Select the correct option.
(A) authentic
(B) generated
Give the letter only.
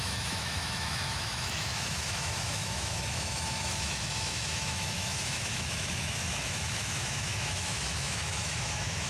B